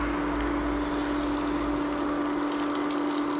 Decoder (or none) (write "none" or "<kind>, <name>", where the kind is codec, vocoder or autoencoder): none